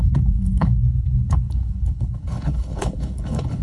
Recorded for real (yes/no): no